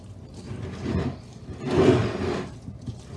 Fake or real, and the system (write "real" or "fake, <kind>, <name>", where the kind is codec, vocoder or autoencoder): real